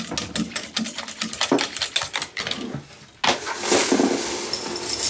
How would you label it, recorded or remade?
recorded